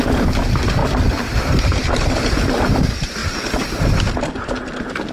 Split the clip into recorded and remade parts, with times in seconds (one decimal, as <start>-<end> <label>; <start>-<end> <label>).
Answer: 0.0-0.8 recorded; 0.8-2.2 remade; 2.2-3.2 recorded; 3.2-4.1 remade; 4.1-5.1 recorded

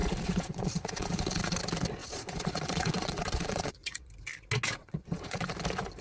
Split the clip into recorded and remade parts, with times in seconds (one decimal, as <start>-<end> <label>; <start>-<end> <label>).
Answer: 0.0-1.6 remade; 1.6-2.0 recorded; 2.0-4.1 remade; 4.1-4.8 recorded; 4.8-5.5 remade; 5.5-6.0 recorded

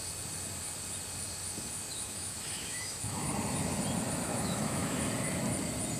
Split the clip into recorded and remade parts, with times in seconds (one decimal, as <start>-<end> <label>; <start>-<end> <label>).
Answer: 0.0-1.9 recorded; 1.9-3.3 remade; 3.3-4.3 recorded; 4.3-5.1 remade; 5.1-6.0 recorded

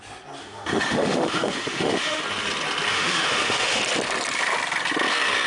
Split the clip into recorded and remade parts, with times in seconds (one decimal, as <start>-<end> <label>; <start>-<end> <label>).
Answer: 0.0-0.4 recorded; 0.4-2.2 remade; 2.2-2.9 recorded; 2.9-3.8 remade; 3.8-5.5 recorded

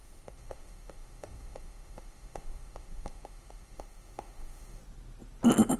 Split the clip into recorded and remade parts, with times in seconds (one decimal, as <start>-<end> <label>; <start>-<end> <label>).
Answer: 0.0-4.8 remade; 4.8-5.8 recorded

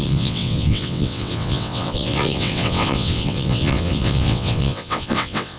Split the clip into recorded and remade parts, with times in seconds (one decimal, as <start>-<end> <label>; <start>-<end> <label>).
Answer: 0.0-5.6 remade